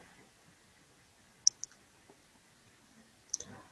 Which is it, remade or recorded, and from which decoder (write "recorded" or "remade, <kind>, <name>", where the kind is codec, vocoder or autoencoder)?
recorded